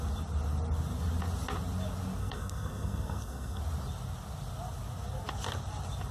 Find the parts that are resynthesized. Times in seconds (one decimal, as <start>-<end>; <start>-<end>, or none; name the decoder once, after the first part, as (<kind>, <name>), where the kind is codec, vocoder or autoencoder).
2.2-3.6 (codec, SNAC)